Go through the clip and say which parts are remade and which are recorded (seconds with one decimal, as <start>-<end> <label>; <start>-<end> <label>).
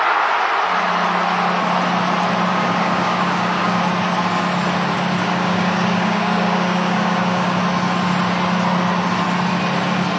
0.0-2.5 recorded; 2.5-3.8 remade; 3.8-5.2 recorded; 5.2-7.6 remade; 7.6-10.2 recorded